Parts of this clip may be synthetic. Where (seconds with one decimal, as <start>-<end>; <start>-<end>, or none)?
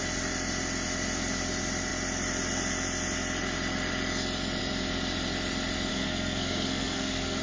5.9-7.4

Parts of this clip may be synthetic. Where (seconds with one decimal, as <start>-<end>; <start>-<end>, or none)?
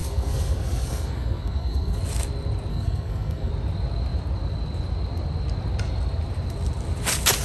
0.0-2.0; 2.7-3.5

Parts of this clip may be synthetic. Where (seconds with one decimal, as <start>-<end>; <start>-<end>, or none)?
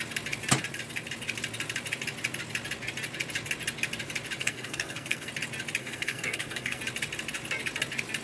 4.4-5.3; 5.8-6.8